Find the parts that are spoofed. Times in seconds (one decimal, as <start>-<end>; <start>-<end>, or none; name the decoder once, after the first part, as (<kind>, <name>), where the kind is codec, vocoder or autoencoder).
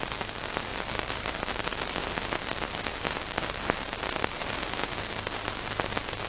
0.7-1.5 (vocoder, BigVGAN v2)